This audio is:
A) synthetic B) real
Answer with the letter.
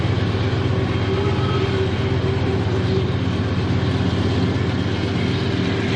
B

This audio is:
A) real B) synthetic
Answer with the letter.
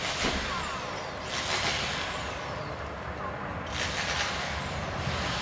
A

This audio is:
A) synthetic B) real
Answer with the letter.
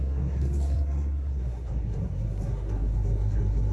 A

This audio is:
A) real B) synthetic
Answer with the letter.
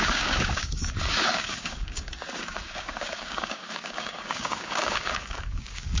B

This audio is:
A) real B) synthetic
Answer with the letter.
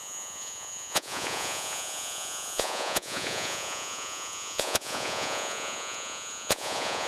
B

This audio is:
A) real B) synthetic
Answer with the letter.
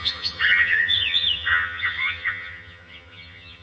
B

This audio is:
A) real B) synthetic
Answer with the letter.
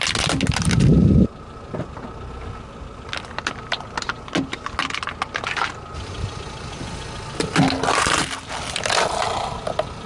A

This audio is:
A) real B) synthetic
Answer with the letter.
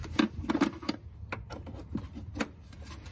A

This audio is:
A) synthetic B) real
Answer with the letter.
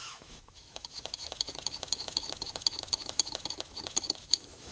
A